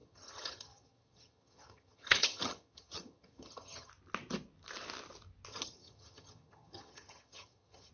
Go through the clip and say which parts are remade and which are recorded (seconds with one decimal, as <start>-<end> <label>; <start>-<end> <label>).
0.0-3.9 remade; 3.9-5.5 recorded; 5.5-7.9 remade